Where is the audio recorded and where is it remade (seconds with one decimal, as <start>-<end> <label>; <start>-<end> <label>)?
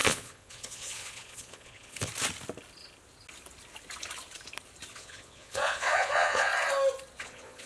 0.0-2.1 remade; 2.1-4.9 recorded; 4.9-6.5 remade; 6.5-7.2 recorded; 7.2-7.7 remade